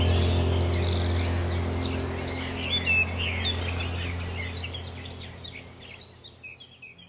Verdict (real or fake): real